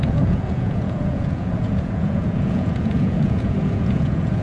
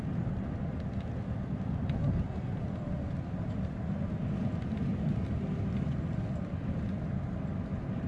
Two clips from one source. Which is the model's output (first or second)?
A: first